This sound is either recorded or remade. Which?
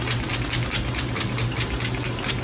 recorded